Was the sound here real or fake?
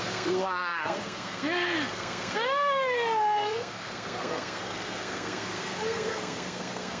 fake